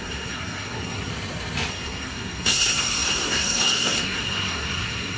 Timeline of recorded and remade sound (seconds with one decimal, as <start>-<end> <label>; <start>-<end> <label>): 0.0-1.1 remade; 1.1-1.7 recorded; 1.7-5.2 remade